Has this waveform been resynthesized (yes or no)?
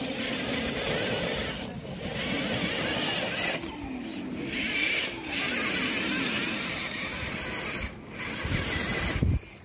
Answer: no